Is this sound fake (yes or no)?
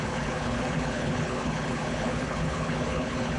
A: yes